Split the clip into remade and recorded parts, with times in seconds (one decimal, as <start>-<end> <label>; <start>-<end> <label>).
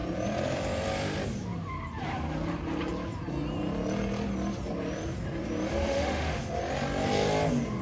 0.0-5.7 recorded; 5.7-6.6 remade; 6.6-7.8 recorded